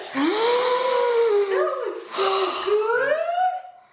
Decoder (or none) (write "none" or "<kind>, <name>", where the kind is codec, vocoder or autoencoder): none